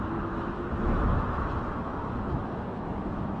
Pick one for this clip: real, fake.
fake